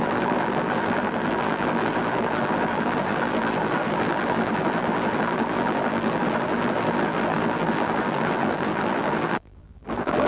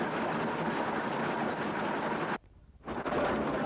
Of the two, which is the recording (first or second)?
second